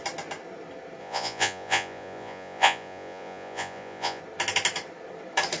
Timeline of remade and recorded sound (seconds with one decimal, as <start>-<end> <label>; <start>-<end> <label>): 0.0-1.0 recorded; 1.0-4.2 remade; 4.2-5.6 recorded